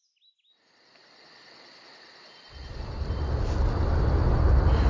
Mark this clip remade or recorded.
recorded